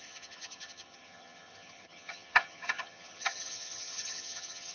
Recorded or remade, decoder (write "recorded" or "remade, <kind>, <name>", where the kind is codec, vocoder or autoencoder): remade, vocoder, HiFi-GAN